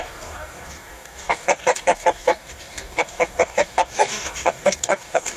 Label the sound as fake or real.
fake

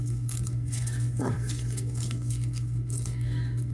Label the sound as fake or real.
fake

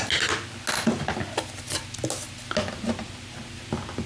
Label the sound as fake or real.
real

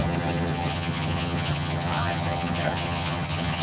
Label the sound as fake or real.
fake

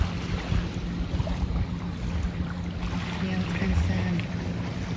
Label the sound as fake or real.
real